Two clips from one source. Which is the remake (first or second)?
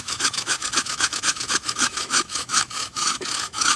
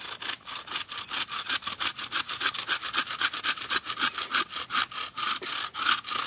first